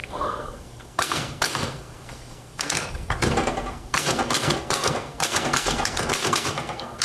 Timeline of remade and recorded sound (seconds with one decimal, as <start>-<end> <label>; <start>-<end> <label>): 0.0-7.0 remade

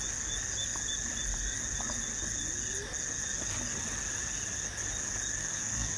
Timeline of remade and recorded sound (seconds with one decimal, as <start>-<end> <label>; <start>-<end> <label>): 0.0-5.4 recorded; 5.4-6.0 remade